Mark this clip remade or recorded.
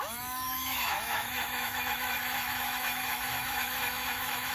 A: remade